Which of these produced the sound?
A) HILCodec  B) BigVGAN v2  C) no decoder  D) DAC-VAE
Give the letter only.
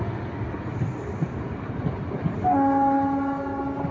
C